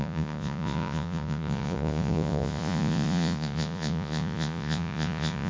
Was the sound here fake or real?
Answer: fake